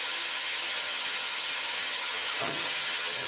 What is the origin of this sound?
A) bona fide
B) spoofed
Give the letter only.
B